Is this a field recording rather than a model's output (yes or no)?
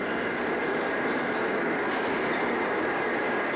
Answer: yes